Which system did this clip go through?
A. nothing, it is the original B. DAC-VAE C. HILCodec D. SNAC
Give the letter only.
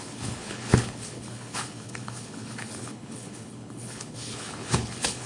C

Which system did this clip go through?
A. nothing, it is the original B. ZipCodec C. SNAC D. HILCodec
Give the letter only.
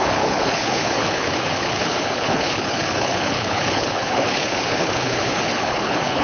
D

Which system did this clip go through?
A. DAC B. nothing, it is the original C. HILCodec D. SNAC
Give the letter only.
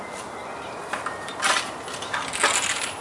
B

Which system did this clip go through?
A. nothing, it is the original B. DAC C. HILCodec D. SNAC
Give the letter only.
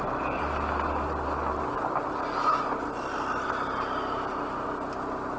A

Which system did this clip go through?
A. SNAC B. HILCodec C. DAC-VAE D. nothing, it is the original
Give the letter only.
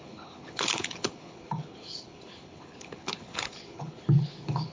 B